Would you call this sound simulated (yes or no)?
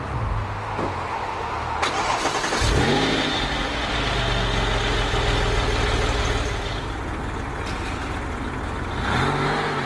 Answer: no